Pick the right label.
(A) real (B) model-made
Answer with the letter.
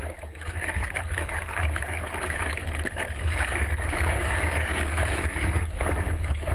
B